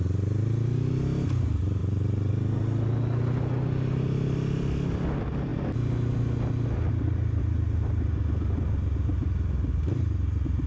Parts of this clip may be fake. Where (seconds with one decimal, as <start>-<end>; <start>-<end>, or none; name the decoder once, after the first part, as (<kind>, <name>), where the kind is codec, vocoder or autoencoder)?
none